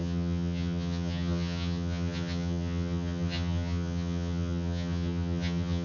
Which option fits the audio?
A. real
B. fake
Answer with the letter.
B